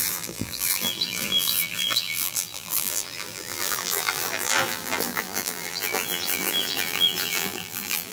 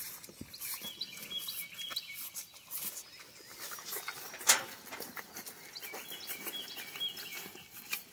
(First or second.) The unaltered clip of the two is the second